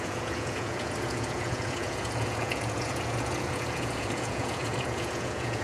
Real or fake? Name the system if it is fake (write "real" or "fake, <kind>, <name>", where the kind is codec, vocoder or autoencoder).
fake, vocoder, Vocos